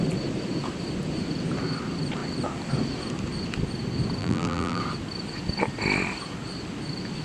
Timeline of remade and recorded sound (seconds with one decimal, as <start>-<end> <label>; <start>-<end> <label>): 0.0-4.2 recorded; 4.2-4.8 remade; 4.8-7.2 recorded